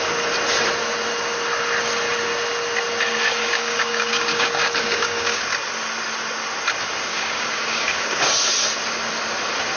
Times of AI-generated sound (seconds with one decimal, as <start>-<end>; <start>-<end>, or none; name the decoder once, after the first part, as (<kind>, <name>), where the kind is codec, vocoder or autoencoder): 3.4-5.4 (codec, DAC); 7.1-8.3